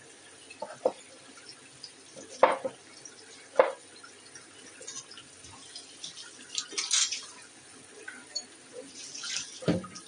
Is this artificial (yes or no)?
no